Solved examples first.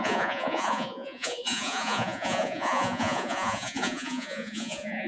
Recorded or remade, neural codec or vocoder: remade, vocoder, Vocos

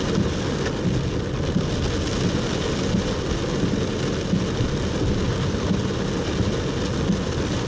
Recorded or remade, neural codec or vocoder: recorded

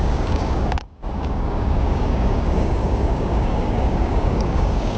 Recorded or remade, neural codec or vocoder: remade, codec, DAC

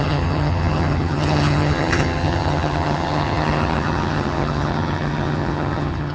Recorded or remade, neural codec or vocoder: remade, vocoder, HiFi-GAN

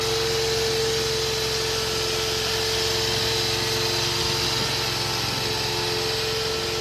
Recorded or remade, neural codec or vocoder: recorded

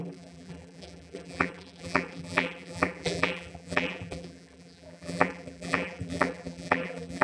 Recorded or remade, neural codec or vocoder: remade, vocoder, BigVGAN v2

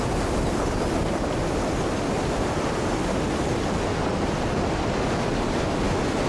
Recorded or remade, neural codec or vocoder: recorded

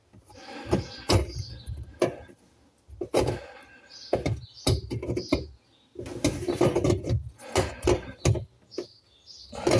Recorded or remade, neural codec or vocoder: recorded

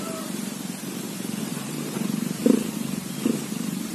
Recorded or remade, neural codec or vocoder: remade, vocoder, BigVGAN v2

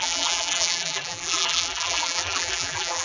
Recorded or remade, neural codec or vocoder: remade, vocoder, BigVGAN v2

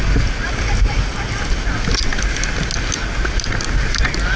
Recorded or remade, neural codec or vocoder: recorded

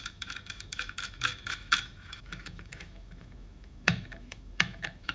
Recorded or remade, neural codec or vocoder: remade, autoencoder, DAC-VAE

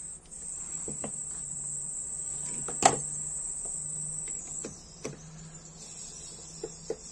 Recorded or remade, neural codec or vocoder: recorded